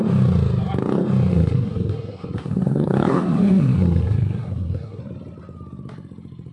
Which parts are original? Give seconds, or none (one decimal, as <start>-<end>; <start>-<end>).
0.0-1.3; 5.0-6.5